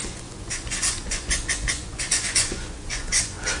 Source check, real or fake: fake